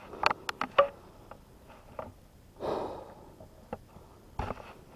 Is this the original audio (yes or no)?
yes